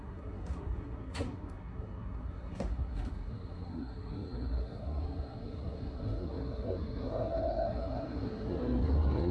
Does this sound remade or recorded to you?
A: remade